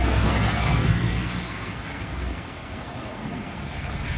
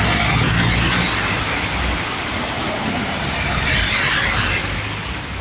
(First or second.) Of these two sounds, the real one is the second